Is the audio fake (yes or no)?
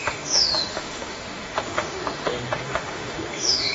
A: yes